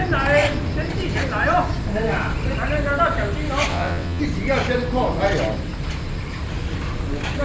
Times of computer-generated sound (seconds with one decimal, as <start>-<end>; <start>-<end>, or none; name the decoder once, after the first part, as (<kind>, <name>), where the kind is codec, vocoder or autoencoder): 3.7-4.2 (vocoder, WaveNeXt)